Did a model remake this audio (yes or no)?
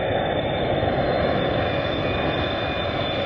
no